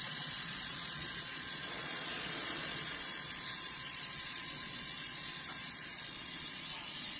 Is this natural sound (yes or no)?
no